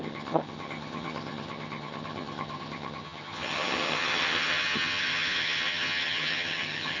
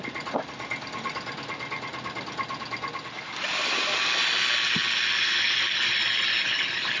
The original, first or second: second